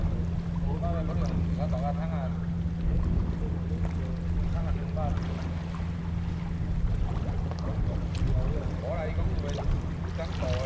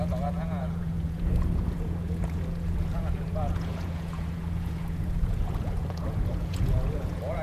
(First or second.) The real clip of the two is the first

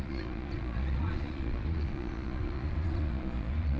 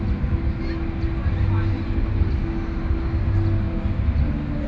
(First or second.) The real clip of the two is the second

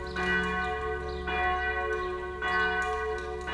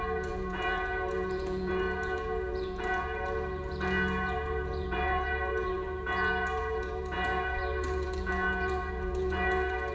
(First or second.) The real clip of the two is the first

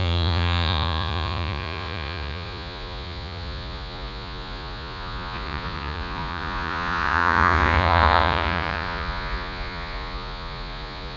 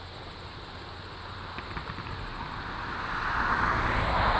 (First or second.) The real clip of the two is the second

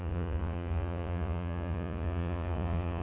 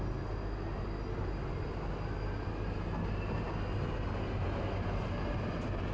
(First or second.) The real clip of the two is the second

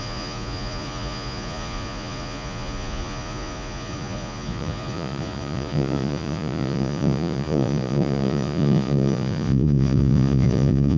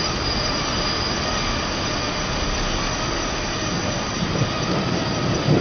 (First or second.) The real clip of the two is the second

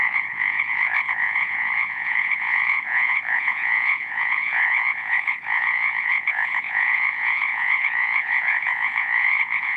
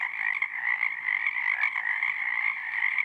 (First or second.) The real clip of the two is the second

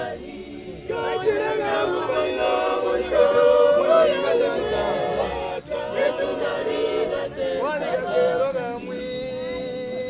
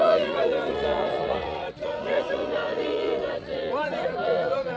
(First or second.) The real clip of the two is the first